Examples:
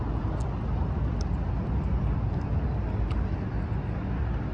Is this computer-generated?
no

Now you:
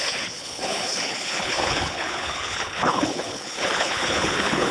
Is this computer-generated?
yes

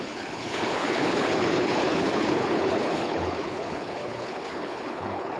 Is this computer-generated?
yes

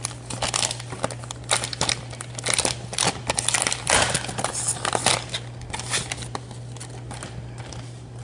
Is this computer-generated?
no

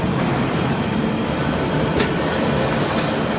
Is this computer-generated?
no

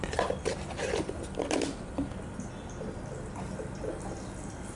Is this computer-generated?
no